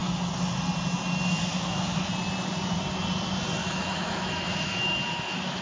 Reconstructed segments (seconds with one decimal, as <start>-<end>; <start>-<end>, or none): 1.5-2.1; 3.6-5.6